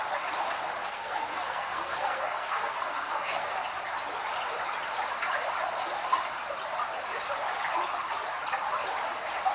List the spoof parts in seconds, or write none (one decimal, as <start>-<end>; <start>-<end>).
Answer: 0.8-3.5